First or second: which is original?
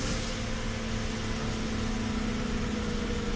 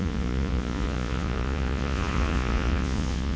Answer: first